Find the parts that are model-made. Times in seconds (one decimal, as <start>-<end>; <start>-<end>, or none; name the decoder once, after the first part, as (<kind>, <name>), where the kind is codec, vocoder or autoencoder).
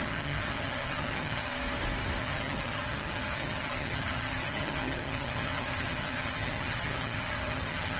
0.0-1.5 (vocoder, HiFi-GAN); 2.2-8.0